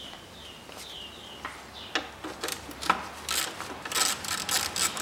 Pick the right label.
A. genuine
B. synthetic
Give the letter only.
A